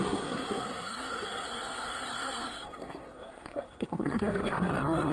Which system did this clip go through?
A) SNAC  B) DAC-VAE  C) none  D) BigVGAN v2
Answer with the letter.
A